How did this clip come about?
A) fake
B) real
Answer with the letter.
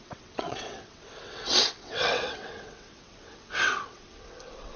A